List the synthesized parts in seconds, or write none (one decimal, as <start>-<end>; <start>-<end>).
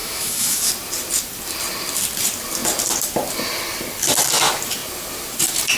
0.0-0.7